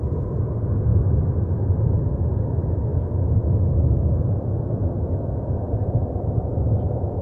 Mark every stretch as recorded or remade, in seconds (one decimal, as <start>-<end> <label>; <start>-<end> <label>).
0.0-0.9 recorded; 0.9-1.7 remade; 1.7-2.9 recorded; 2.9-4.2 remade; 4.2-7.2 recorded